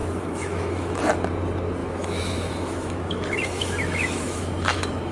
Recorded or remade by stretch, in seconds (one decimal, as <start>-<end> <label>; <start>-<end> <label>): 0.0-1.0 remade; 1.0-1.8 recorded; 1.8-5.1 remade